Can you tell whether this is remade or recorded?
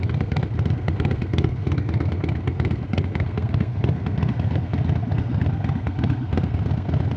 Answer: remade